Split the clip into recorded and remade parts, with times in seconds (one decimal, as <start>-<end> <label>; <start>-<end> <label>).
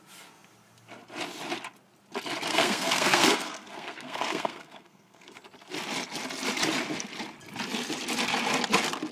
0.0-2.5 recorded; 2.5-5.4 remade; 5.4-9.1 recorded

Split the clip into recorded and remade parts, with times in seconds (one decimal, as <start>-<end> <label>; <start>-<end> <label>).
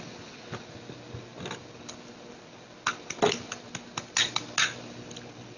0.0-5.6 recorded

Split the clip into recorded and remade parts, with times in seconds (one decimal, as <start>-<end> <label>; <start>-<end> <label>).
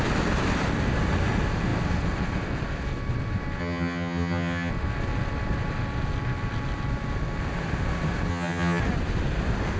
0.0-3.6 recorded; 3.6-4.7 remade; 4.7-8.3 recorded; 8.3-8.8 remade; 8.8-9.8 recorded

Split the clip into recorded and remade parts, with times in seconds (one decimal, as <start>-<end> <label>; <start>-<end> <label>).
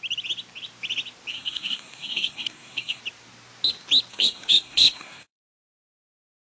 0.0-1.3 recorded; 1.3-3.0 remade; 3.0-4.1 recorded; 4.1-6.4 remade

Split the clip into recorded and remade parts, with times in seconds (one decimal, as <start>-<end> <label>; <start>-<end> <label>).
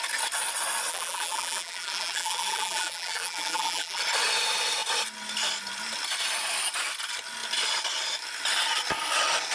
0.0-0.9 recorded; 0.9-4.0 remade; 4.0-9.5 recorded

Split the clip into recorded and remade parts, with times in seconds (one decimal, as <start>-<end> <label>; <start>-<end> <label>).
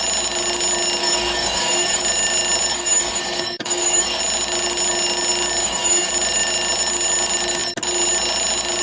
0.0-1.0 recorded; 1.0-2.0 remade; 2.0-2.7 recorded; 2.7-4.2 remade; 4.2-5.6 recorded; 5.6-6.1 remade; 6.1-8.8 recorded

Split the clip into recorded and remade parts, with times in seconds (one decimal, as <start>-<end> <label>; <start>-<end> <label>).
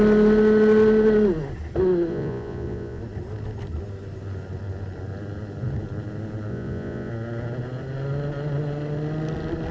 0.0-2.1 recorded; 2.1-3.0 remade; 3.0-6.5 recorded; 6.5-7.1 remade; 7.1-9.7 recorded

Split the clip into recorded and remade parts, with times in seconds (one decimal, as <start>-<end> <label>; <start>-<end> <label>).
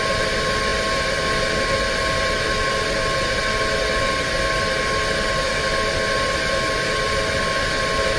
0.0-8.2 recorded